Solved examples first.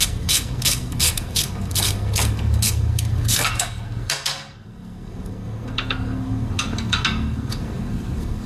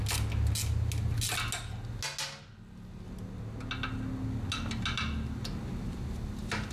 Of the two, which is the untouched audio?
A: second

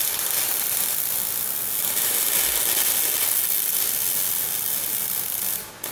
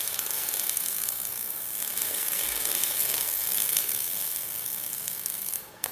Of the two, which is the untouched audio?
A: first